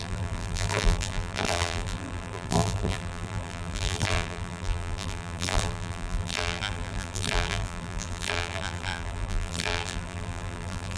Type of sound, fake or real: fake